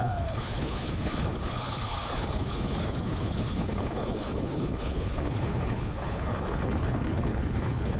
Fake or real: fake